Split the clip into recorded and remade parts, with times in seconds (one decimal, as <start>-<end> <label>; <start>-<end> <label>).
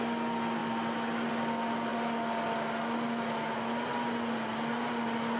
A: 0.0-5.4 recorded